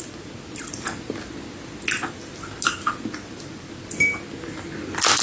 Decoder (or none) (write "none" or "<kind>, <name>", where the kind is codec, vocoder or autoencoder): none